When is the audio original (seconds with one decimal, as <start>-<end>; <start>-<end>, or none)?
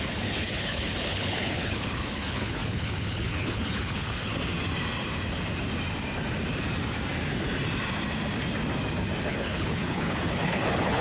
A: 4.3-9.3